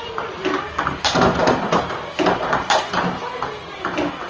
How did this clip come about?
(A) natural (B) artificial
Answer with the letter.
A